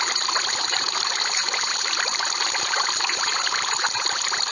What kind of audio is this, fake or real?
fake